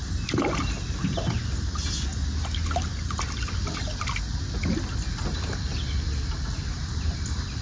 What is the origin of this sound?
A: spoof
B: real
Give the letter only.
B